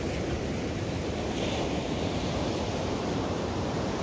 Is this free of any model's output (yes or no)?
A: no